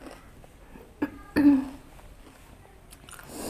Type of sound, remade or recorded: recorded